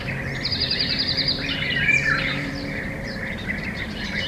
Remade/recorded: remade